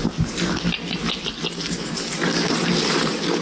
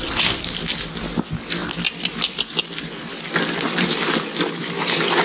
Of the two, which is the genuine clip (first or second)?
second